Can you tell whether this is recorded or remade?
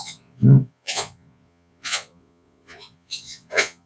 remade